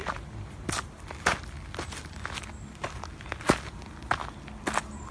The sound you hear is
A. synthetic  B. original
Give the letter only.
B